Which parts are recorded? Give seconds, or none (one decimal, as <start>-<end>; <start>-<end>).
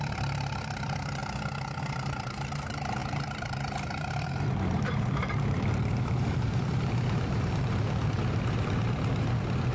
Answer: 1.2-1.8